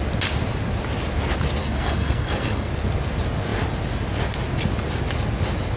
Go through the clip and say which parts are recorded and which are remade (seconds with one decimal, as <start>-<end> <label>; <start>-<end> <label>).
0.0-1.6 recorded; 1.6-2.7 remade; 2.7-5.8 recorded